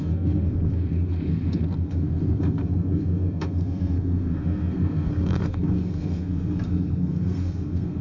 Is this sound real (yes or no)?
no